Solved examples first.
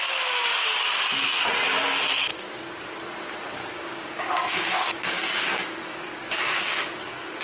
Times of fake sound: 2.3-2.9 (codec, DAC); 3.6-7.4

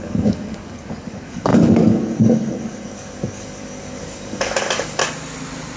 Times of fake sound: 0.0-5.0 (codec, DAC)

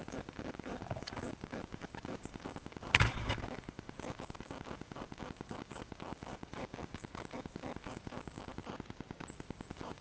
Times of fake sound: 0.0-8.6 (codec, DAC); 9.3-10.0

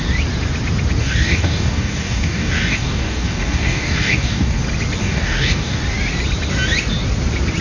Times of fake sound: 1.0-4.6 (codec, DAC); 5.0-5.8

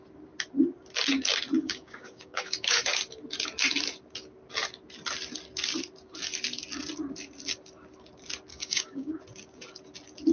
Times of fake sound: 1.6-2.8 (codec, DAC); 8.5-9.2

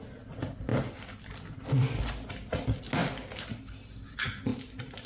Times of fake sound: none